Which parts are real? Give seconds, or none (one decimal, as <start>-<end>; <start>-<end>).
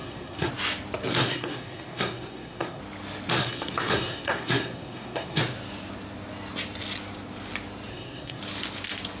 0.5-1.2; 2.8-3.4; 5.4-7.9; 8.4-9.2